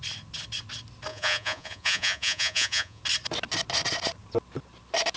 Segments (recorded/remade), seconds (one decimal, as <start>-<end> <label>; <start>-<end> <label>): 0.0-1.1 recorded; 1.1-3.0 remade; 3.0-5.2 recorded